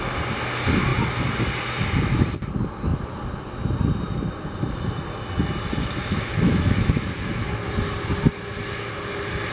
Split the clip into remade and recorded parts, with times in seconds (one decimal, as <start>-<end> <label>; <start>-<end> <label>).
0.0-5.8 recorded; 5.8-7.5 remade; 7.5-9.5 recorded